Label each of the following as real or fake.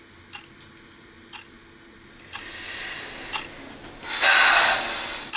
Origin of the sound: real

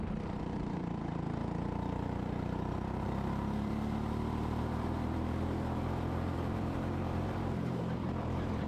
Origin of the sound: fake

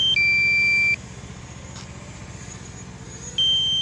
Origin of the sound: real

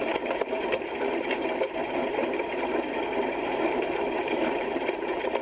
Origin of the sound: fake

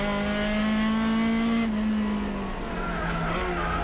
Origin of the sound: real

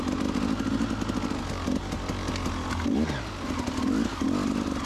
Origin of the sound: real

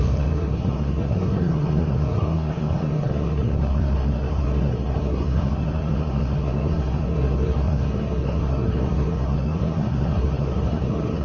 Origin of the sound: fake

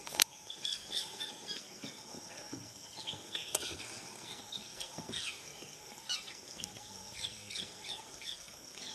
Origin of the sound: fake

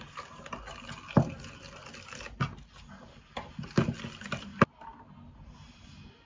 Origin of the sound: real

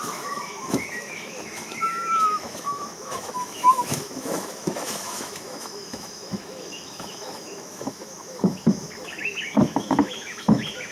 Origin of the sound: fake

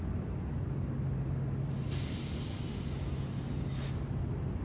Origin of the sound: real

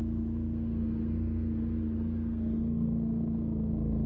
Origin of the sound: fake